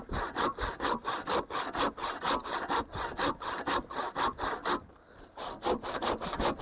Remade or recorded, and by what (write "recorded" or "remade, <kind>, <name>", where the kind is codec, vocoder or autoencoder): recorded